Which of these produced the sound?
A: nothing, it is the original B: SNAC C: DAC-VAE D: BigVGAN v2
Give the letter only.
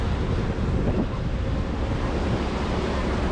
A